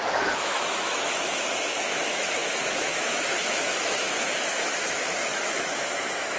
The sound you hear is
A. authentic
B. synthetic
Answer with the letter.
B